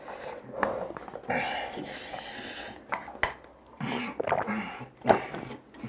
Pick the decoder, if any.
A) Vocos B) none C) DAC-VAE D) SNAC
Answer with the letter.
B